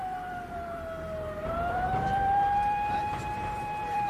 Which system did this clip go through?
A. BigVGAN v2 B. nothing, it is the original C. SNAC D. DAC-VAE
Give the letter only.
A